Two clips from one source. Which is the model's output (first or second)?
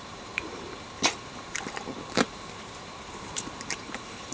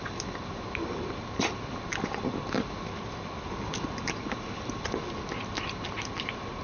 first